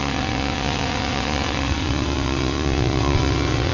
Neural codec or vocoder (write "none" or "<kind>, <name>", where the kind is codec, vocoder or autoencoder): vocoder, WaveNeXt